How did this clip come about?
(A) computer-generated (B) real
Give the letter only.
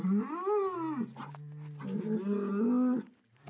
B